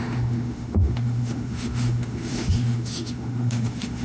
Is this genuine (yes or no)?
no